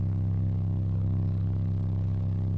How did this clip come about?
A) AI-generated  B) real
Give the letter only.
A